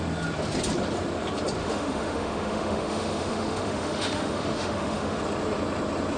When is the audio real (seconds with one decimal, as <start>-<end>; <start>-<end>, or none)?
0.0-1.6; 5.2-6.2